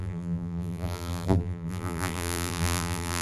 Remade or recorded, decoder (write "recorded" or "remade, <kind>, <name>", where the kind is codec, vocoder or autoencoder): remade, vocoder, BigVGAN v2